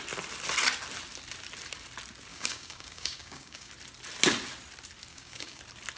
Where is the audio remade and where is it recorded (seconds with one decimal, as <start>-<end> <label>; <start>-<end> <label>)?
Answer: 0.0-2.3 recorded; 2.3-3.7 remade; 3.7-5.1 recorded; 5.1-5.6 remade; 5.6-6.0 recorded